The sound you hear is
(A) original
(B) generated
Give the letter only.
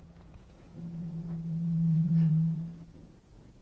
B